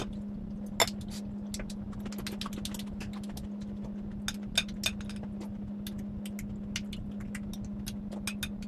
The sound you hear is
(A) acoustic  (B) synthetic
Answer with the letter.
A